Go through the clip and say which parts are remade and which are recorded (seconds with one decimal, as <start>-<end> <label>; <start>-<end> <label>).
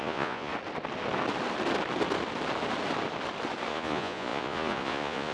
0.0-0.5 remade; 0.5-3.7 recorded; 3.7-5.3 remade